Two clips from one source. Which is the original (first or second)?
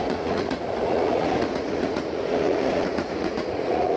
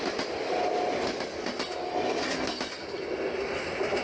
second